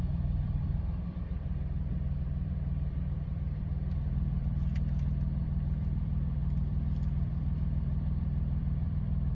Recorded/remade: remade